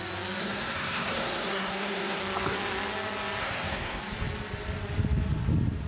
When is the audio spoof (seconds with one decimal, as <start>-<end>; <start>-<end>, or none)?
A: 0.4-2.2; 3.4-4.0